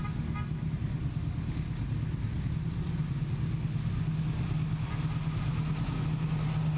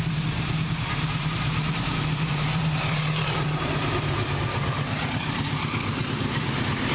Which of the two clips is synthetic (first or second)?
second